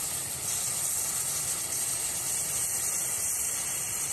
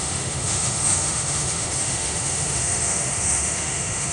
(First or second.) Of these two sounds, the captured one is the first